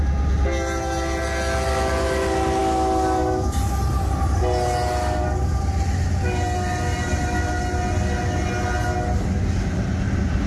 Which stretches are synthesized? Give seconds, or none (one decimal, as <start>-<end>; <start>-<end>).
none